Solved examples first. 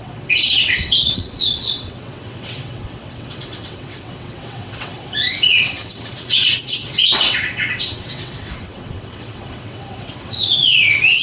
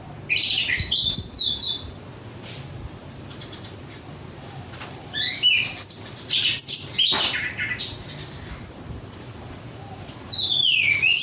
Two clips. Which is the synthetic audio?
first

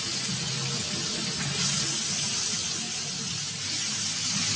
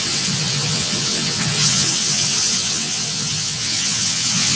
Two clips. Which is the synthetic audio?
second